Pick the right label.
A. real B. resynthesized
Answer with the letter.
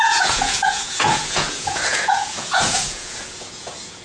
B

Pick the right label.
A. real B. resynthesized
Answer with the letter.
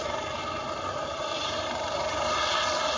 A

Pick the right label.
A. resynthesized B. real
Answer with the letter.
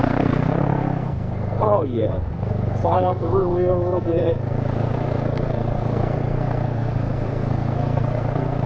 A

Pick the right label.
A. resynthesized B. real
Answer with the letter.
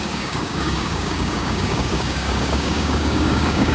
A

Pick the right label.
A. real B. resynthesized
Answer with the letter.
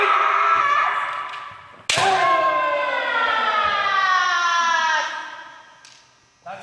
A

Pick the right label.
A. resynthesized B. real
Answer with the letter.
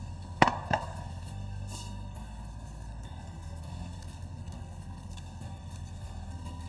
A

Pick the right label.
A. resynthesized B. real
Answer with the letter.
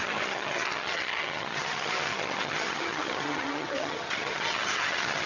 A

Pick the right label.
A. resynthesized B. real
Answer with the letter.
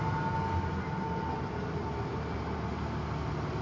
B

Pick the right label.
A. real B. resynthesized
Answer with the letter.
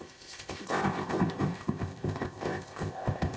B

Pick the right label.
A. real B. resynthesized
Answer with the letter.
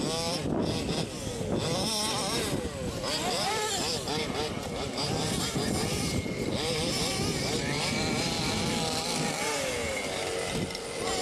A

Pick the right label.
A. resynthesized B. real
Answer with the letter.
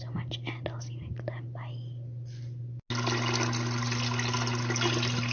B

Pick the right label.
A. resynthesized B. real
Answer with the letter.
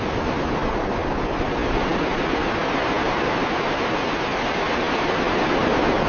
B